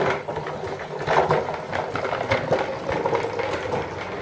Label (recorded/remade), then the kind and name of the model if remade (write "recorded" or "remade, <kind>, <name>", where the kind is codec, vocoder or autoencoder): recorded